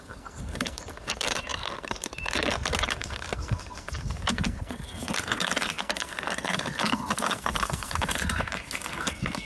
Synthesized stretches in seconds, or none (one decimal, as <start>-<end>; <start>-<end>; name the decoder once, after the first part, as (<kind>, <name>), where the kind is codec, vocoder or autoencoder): 0.0-9.5 (codec, SNAC)